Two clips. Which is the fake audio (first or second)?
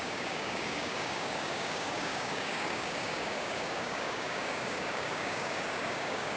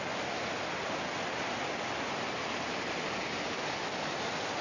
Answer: first